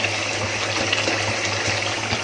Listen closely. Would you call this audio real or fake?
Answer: real